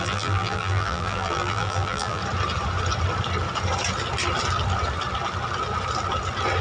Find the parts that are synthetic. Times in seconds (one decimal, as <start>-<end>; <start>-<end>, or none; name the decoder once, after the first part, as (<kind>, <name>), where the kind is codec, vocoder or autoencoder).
0.0-2.2 (vocoder, BigVGAN v2)